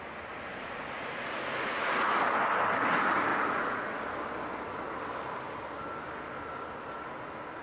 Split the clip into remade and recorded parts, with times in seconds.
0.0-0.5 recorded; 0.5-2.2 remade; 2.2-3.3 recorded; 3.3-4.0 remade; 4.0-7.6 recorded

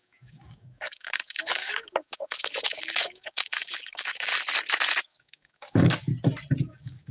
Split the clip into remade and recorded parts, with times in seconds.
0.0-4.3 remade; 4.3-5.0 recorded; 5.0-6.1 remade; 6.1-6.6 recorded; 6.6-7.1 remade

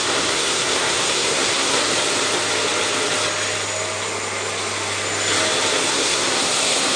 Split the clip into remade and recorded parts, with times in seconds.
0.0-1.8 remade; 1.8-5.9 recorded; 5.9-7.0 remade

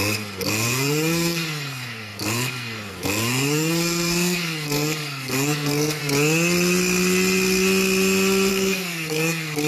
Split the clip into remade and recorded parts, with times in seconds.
0.0-6.0 remade; 6.0-8.5 recorded; 8.5-9.7 remade